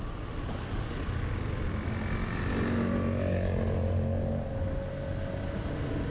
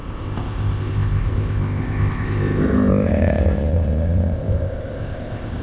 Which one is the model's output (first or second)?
second